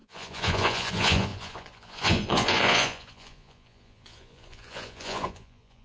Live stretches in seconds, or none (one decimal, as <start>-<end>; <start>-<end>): none